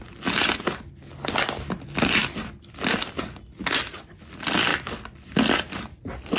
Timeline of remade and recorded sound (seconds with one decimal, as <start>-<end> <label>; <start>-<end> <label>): 0.0-6.4 recorded